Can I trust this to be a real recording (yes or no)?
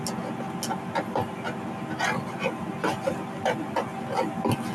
yes